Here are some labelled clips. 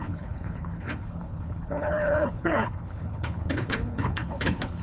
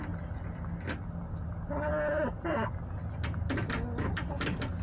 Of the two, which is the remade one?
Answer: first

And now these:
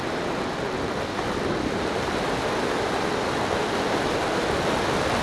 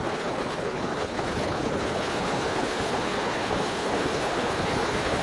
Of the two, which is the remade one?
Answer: second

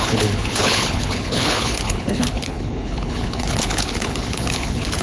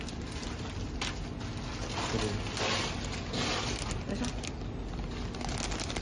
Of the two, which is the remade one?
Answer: first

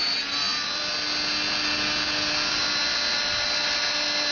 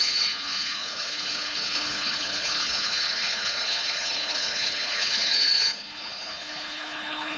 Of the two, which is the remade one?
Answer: second